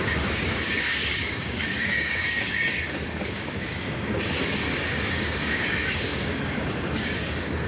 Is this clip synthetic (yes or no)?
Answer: yes